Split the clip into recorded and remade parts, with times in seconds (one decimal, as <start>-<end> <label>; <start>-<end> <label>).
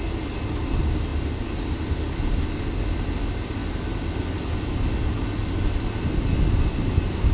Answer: 0.0-7.3 recorded